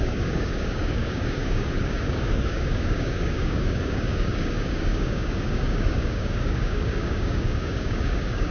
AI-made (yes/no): yes